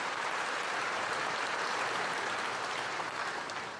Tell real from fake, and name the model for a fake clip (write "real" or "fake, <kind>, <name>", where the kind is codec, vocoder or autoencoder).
fake, vocoder, BigVGAN v2